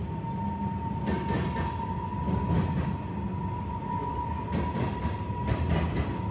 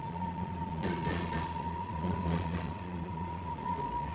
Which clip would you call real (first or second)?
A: first